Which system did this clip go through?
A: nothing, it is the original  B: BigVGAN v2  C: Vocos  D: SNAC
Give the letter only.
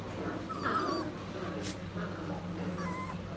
A